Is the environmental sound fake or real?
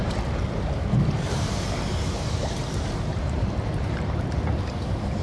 fake